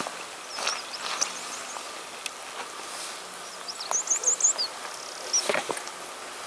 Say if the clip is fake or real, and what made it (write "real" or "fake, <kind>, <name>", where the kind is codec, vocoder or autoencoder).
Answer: real